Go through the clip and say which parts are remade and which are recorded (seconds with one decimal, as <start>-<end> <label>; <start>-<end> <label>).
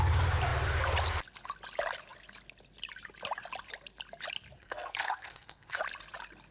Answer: 0.0-4.6 recorded; 4.6-5.8 remade; 5.8-6.5 recorded